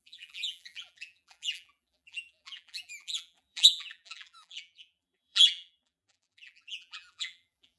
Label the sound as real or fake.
fake